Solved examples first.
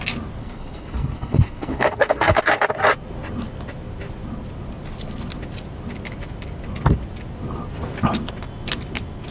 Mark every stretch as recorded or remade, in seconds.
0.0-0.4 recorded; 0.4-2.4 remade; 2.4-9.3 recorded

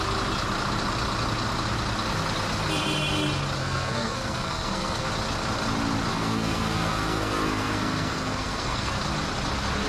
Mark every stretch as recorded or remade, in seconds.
0.0-3.6 recorded; 3.6-5.1 remade; 5.1-6.1 recorded; 6.1-9.0 remade; 9.0-9.9 recorded

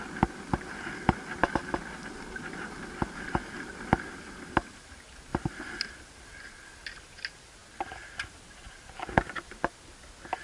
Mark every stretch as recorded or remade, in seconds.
0.0-10.4 recorded

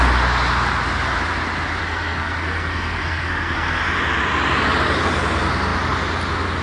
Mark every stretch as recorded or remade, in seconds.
0.0-1.8 recorded; 1.8-3.8 remade; 3.8-6.6 recorded

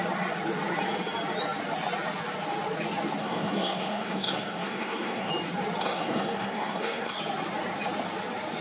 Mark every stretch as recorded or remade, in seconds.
0.0-3.2 recorded; 3.2-5.3 remade; 5.3-5.8 recorded; 5.8-7.2 remade; 7.2-8.6 recorded